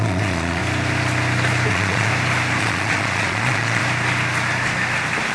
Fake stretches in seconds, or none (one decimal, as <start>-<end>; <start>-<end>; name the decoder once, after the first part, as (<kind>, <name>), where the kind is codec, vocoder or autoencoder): 0.0-0.6 (vocoder, Vocos); 1.7-2.1; 2.6-3.8